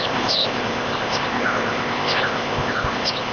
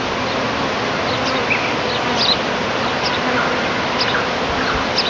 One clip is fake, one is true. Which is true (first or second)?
second